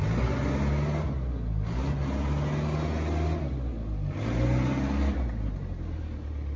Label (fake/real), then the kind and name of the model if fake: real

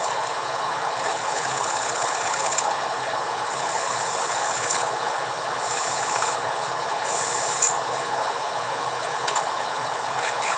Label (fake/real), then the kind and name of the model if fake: fake, codec, HILCodec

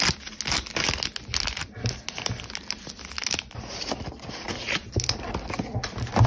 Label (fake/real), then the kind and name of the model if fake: real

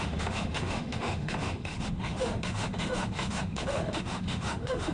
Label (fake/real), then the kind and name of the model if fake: fake, autoencoder, DAC-VAE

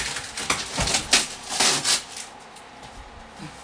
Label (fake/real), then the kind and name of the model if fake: real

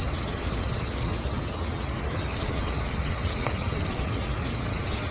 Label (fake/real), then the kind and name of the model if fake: fake, vocoder, WaveNeXt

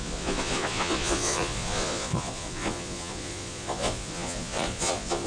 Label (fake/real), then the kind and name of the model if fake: fake, vocoder, Vocos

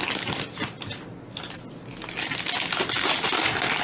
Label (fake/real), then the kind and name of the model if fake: real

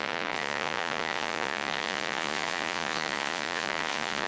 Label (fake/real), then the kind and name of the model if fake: fake, vocoder, Vocos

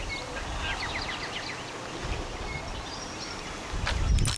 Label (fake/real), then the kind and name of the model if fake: real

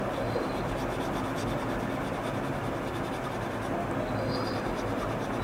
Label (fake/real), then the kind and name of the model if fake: real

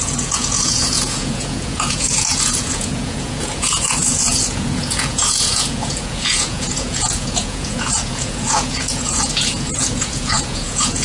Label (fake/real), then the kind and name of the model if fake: fake, vocoder, Vocos